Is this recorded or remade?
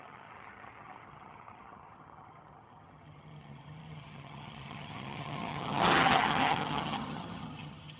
remade